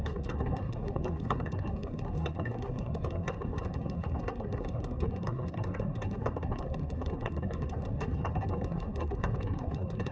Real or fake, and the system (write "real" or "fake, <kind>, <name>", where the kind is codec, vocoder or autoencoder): fake, codec, SNAC